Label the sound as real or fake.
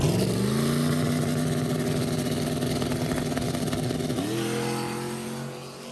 real